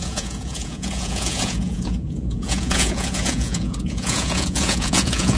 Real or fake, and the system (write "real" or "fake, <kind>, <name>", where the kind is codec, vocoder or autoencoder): fake, vocoder, Vocos